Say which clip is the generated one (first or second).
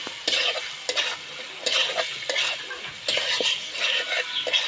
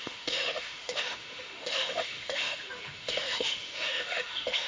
second